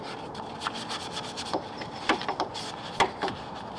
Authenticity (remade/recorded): recorded